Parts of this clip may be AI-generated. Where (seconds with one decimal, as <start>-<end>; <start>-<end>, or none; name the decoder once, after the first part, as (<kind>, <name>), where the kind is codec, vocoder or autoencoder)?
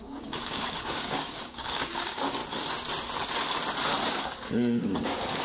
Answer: 0.0-2.4 (codec, DAC); 4.1-5.4